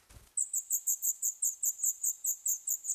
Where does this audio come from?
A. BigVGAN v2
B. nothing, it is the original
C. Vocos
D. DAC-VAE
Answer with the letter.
B